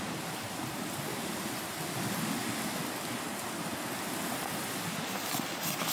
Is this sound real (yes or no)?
yes